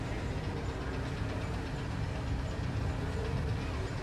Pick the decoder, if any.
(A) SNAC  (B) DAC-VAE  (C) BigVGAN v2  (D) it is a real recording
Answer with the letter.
D